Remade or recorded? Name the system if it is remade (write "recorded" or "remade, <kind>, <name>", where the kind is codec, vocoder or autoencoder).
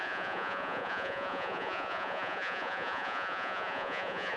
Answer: remade, vocoder, Vocos